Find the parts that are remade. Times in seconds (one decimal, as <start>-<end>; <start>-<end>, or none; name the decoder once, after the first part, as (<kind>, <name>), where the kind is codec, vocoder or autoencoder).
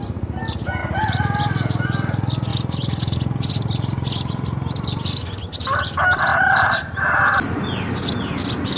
0.8-1.4 (vocoder, BigVGAN v2); 6.3-7.2